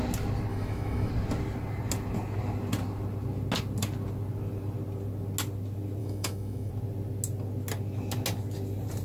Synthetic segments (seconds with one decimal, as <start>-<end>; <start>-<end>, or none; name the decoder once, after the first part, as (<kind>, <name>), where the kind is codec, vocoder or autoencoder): 0.5-1.1 (autoencoder, DAC-VAE); 6.0-6.7